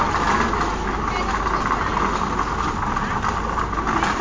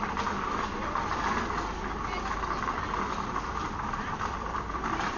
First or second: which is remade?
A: second